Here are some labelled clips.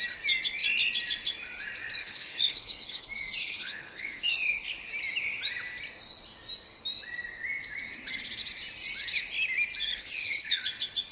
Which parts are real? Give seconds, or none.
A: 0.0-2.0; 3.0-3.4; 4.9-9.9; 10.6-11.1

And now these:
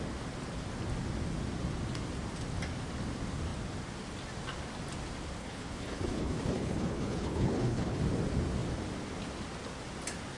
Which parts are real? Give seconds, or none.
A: 0.0-5.4; 8.0-10.4

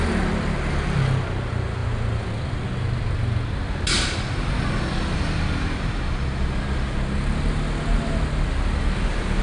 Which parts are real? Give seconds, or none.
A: 0.0-9.4